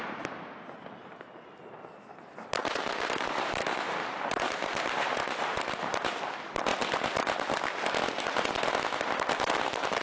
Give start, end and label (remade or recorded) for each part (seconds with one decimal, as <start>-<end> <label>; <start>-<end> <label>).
0.0-2.6 recorded; 2.6-5.9 remade; 5.9-10.0 recorded